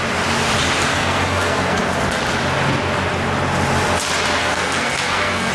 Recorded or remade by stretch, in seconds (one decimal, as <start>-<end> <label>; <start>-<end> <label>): 0.0-0.9 recorded; 0.9-1.8 remade; 1.8-4.4 recorded; 4.4-5.5 remade